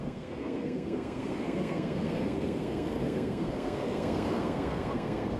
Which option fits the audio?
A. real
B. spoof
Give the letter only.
B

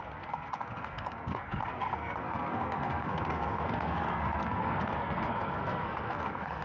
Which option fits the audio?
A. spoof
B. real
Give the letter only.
A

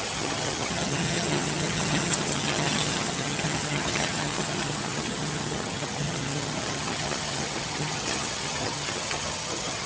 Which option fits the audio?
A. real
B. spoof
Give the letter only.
B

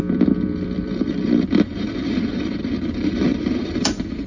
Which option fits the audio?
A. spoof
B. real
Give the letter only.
A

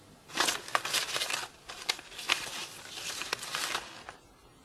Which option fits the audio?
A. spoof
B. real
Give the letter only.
B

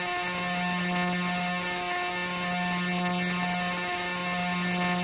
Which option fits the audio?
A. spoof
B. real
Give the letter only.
B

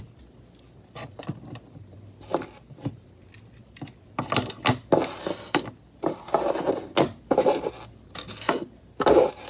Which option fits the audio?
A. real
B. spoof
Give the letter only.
A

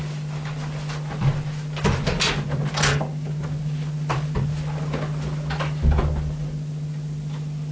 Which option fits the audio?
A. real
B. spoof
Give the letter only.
A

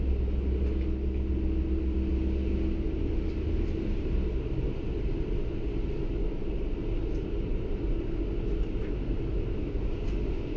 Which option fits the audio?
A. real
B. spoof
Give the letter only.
A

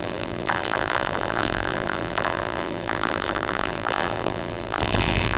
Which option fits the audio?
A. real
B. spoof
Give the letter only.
B